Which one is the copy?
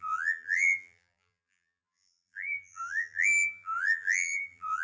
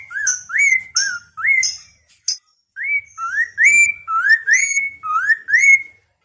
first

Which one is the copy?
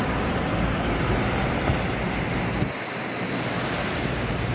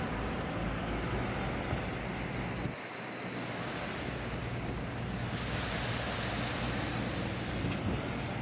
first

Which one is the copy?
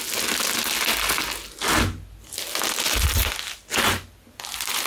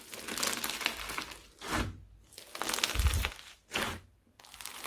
second